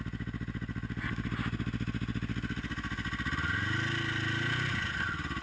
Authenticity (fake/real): real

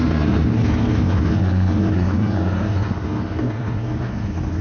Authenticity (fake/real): fake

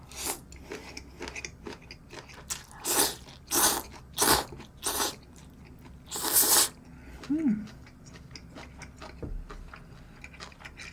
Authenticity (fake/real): real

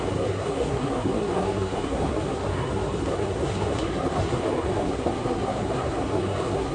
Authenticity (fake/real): fake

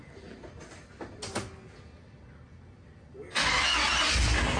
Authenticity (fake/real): real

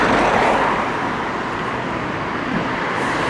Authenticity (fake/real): real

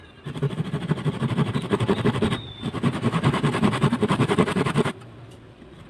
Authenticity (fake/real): real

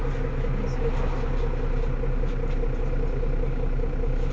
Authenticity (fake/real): real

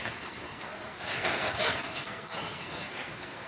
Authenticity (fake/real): fake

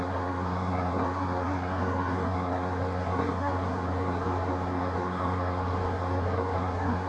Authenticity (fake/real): fake